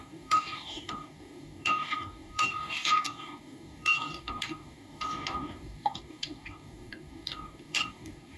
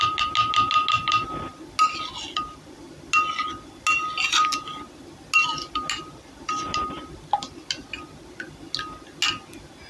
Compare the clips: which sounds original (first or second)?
second